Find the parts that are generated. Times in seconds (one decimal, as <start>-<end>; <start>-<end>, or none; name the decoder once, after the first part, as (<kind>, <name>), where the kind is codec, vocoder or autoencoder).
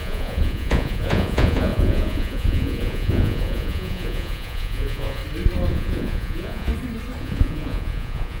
0.0-5.2 (vocoder, Vocos); 5.7-6.7; 7.2-8.4